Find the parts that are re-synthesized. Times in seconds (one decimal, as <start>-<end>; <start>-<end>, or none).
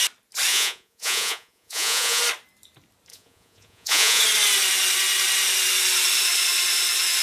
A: 0.5-2.2; 3.1-4.2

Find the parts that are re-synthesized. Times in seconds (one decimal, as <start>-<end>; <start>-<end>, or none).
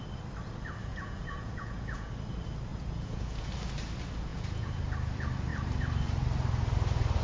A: 0.8-2.1; 2.7-3.5; 4.3-4.8